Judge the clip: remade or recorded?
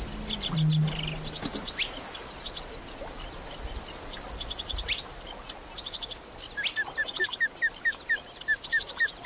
recorded